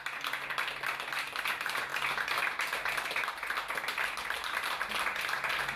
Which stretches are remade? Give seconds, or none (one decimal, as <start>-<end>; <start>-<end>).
none